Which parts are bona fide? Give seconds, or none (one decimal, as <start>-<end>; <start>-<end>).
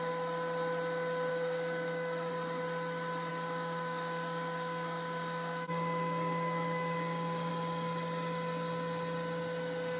0.0-1.3; 2.3-3.3; 7.5-10.0